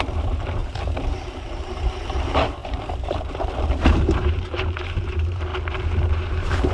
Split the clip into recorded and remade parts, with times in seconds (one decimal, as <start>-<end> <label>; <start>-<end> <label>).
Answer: 0.0-0.6 remade; 0.6-1.1 recorded; 1.1-5.5 remade; 5.5-6.1 recorded; 6.1-6.7 remade